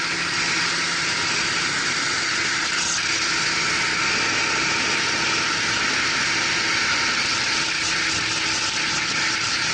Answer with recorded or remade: recorded